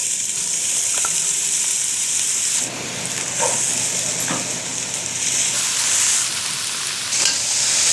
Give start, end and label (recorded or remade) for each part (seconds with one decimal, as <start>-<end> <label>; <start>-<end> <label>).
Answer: 0.0-2.1 remade; 2.1-7.9 recorded